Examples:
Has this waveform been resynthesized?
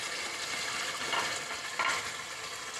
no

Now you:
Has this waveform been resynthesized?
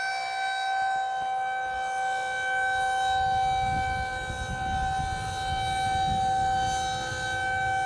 no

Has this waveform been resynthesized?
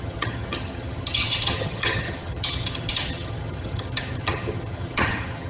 yes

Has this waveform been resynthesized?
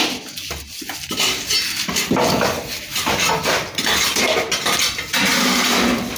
no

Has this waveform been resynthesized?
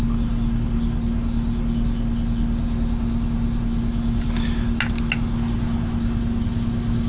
no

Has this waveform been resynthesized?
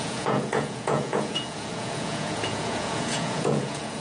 yes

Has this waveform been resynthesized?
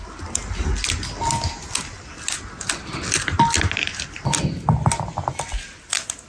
no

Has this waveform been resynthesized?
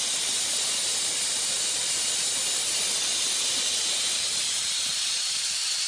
no